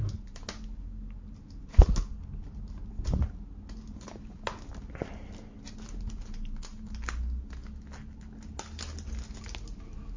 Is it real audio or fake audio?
real